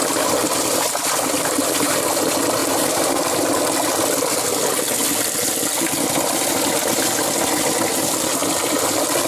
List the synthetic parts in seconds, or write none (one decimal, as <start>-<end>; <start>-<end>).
none